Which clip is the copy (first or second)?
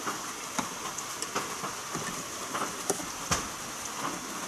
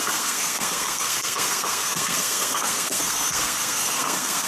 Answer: second